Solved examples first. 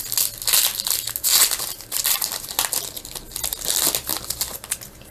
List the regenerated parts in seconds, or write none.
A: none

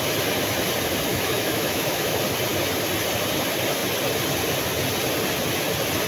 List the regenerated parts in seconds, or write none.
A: 1.1-2.2 (autoencoder, DAC-VAE)

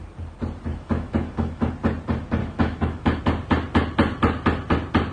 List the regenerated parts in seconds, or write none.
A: 0.7-1.7 (autoencoder, DAC-VAE); 2.4-3.2

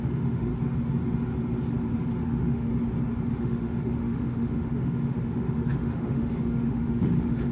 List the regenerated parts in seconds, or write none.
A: 0.0-0.5 (autoencoder, DAC-VAE); 2.2-2.7; 3.4-7.5